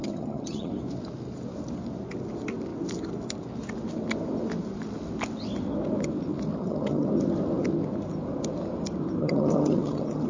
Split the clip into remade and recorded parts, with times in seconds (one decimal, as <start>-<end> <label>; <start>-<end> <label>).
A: 0.0-0.7 remade; 0.7-6.6 recorded; 6.6-7.1 remade; 7.1-9.2 recorded; 9.2-10.3 remade